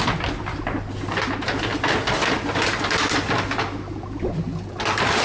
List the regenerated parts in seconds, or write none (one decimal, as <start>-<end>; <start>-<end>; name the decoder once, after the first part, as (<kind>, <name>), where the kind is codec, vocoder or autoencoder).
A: none